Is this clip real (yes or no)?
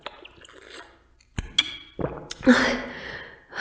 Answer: yes